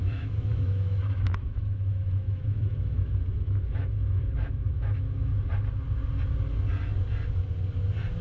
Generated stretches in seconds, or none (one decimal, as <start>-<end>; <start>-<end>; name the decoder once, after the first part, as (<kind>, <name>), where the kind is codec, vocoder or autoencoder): 0.0-5.3 (autoencoder, DAC-VAE)